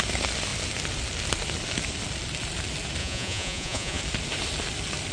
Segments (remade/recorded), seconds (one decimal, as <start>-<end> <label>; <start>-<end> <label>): 0.0-3.0 recorded; 3.0-4.0 remade; 4.0-5.1 recorded